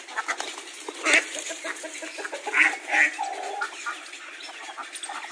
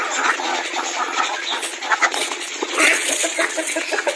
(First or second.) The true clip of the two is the first